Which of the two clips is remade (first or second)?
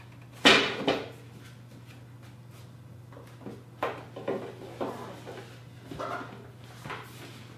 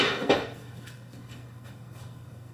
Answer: second